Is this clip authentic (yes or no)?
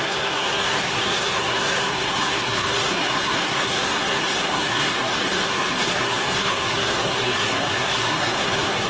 no